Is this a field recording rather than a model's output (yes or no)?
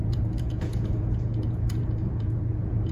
no